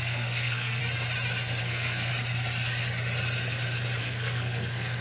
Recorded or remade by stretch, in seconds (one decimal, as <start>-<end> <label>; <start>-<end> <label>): 0.0-0.8 remade; 0.8-1.6 recorded; 1.6-2.1 remade; 2.1-4.0 recorded; 4.0-5.0 remade